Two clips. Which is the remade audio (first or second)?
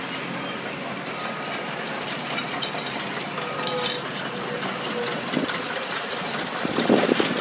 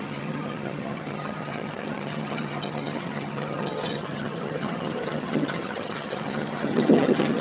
second